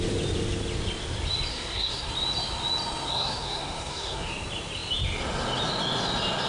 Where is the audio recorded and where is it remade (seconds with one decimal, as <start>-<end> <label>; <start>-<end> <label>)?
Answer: 0.0-1.5 recorded; 1.5-2.1 remade; 2.1-3.1 recorded; 3.1-4.3 remade; 4.3-6.5 recorded